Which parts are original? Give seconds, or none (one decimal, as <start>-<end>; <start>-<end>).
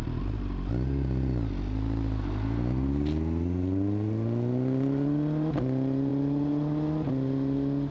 0.0-7.9